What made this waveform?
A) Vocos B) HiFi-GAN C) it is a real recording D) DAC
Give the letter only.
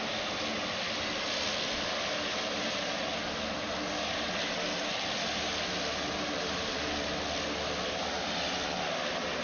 C